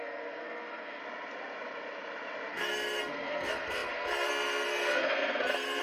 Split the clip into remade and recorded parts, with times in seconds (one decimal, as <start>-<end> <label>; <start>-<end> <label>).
0.0-1.0 remade; 1.0-2.5 recorded; 2.5-5.8 remade